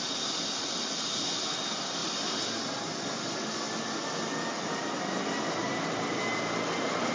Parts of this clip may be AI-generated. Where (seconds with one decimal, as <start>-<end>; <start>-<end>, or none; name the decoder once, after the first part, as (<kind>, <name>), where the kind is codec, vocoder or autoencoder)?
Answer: none